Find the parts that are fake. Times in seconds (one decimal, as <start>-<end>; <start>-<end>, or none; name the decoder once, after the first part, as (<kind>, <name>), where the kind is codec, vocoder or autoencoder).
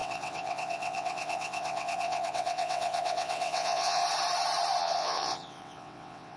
0.0-4.0 (vocoder, WaveNeXt); 4.8-6.4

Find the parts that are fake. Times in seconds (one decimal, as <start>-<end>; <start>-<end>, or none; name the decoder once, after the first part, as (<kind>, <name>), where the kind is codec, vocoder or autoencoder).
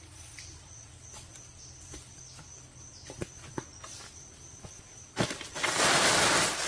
none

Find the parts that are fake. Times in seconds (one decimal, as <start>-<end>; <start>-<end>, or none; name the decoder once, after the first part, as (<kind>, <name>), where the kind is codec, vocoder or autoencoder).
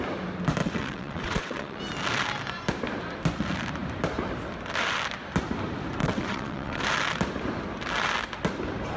0.6-1.8 (vocoder, WaveNeXt); 6.0-6.8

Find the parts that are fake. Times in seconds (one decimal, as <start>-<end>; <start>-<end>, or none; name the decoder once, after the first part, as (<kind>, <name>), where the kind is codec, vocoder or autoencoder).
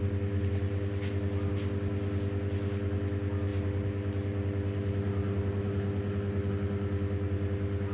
none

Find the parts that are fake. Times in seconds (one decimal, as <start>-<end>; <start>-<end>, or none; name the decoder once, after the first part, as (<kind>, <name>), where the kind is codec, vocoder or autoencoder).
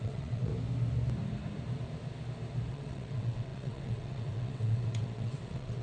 0.0-0.5 (vocoder, WaveNeXt); 2.7-5.8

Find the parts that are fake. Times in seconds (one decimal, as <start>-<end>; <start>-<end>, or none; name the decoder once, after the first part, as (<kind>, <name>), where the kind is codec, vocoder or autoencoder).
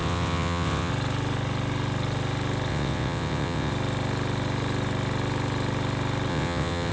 0.0-0.9 (vocoder, WaveNeXt); 2.7-3.7; 6.3-6.9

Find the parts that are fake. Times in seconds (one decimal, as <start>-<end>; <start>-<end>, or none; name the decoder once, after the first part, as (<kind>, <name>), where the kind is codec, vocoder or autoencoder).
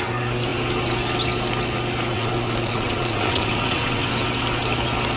2.1-4.1 (vocoder, WaveNeXt)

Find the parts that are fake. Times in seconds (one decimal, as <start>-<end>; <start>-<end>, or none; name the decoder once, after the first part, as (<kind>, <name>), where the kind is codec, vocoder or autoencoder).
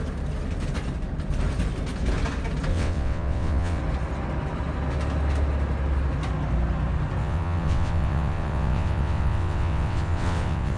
2.7-3.8 (vocoder, WaveNeXt); 7.2-10.8